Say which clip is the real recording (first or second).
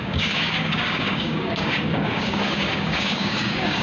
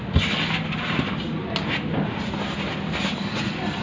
second